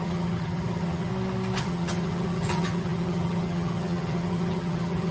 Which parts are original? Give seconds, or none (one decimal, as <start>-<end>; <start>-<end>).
1.1-1.6